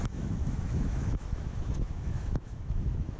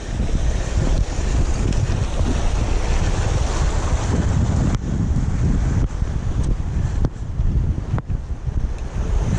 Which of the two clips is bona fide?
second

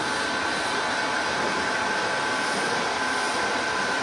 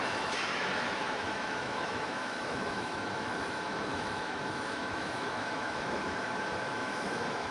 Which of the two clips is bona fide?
first